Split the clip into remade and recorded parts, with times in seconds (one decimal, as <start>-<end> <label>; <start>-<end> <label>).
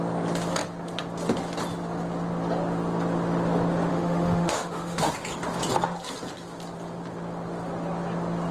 0.0-3.9 recorded; 3.9-5.1 remade; 5.1-8.5 recorded